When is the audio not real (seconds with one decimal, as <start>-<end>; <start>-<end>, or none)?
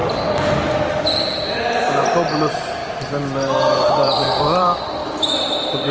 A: 2.0-5.9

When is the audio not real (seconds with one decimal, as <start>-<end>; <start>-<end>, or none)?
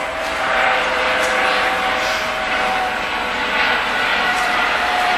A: 0.0-2.9; 4.1-5.2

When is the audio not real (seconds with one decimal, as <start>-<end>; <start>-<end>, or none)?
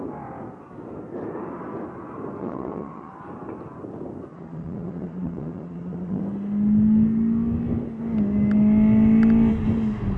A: 2.4-3.1; 4.3-6.2